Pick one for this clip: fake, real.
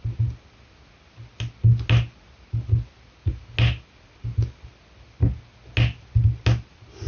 real